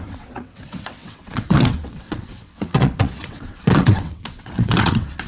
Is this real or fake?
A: fake